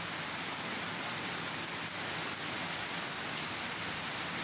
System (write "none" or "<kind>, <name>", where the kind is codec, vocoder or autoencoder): none